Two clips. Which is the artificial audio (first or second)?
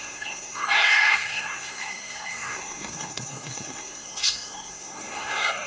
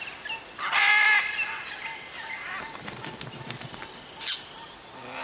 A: first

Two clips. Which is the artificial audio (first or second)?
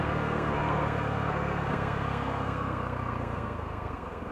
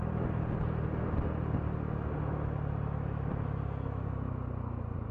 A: first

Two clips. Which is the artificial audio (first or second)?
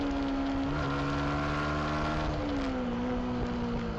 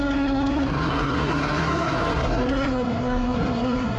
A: second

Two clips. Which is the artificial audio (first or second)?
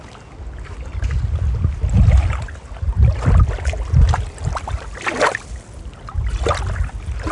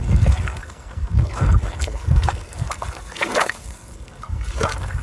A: second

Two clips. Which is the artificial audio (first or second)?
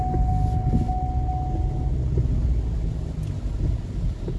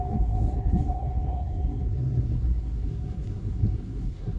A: second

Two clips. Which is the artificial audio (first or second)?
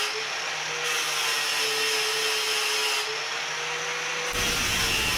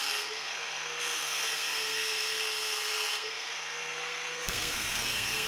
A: second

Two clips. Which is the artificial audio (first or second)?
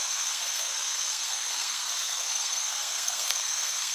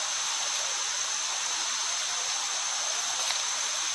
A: first